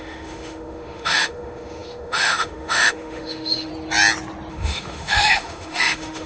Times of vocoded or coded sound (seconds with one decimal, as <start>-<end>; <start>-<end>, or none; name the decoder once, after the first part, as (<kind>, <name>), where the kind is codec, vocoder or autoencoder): 0.0-3.7 (autoencoder, DAC-VAE); 4.5-6.3